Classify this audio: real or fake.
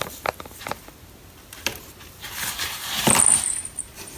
real